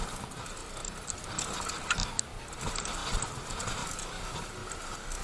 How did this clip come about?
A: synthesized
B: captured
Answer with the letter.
B